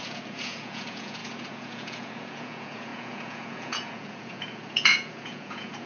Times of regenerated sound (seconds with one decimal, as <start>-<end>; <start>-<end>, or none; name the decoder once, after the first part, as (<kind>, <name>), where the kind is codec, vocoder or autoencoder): 0.0-5.9 (vocoder, Vocos)